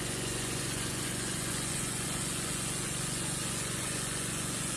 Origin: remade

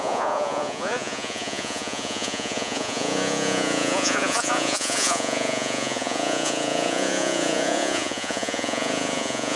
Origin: remade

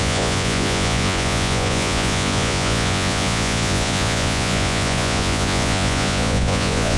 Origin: remade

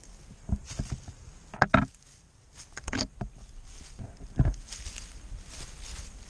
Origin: recorded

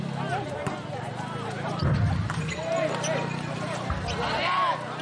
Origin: recorded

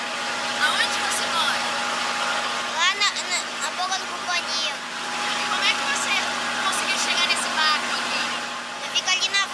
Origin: recorded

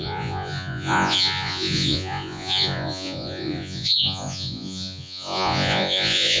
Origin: remade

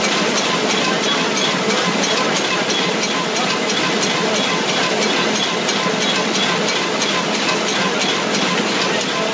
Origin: recorded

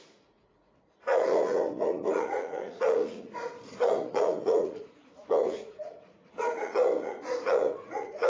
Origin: remade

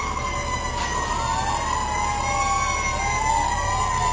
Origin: recorded